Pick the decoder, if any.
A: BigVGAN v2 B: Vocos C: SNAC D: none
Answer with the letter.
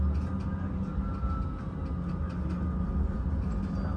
D